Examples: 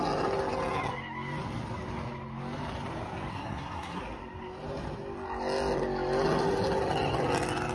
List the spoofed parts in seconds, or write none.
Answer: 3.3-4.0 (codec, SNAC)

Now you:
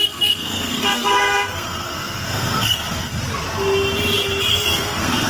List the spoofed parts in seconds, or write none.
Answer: 0.0-3.2 (codec, SNAC); 4.5-5.3

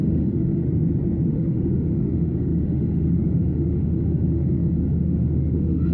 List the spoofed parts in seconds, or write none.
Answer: 0.0-0.6 (autoencoder, DAC-VAE); 1.3-5.9

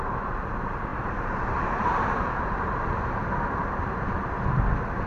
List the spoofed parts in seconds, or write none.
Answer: 0.9-3.0 (vocoder, BigVGAN v2)

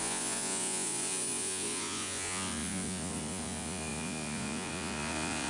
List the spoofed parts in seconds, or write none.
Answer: 0.0-5.5 (vocoder, Vocos)

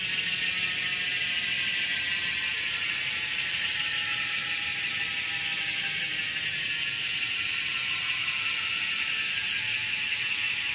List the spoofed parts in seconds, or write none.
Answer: 2.5-3.8 (vocoder, Vocos)

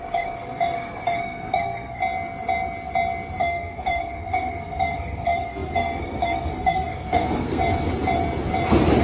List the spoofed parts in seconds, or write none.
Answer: 0.0-2.0 (codec, SNAC); 3.4-7.6